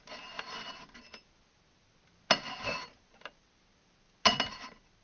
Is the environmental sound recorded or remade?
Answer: recorded